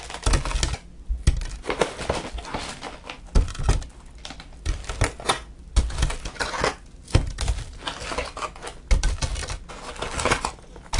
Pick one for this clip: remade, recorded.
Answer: recorded